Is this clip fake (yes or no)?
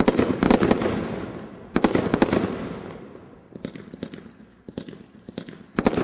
no